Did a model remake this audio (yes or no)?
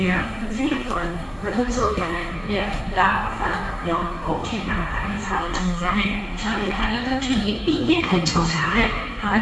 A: yes